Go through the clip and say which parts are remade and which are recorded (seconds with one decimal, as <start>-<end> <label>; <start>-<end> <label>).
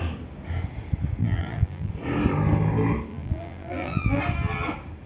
0.0-1.2 recorded; 1.2-1.9 remade; 1.9-3.1 recorded; 3.1-4.2 remade; 4.2-5.1 recorded